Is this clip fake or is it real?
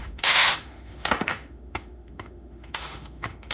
fake